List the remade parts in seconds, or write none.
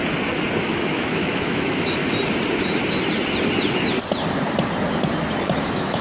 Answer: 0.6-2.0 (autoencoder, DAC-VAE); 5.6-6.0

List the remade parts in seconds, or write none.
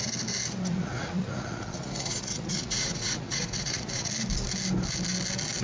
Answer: 0.7-4.1 (vocoder, Vocos)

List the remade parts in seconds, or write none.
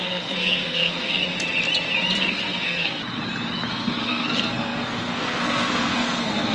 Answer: 0.0-1.2 (codec, SNAC); 2.2-3.0; 3.7-6.5